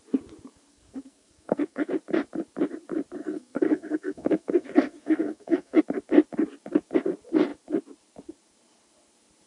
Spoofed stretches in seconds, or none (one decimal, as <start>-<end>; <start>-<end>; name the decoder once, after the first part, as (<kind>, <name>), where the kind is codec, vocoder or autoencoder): 0.7-1.9 (codec, SNAC); 3.2-5.8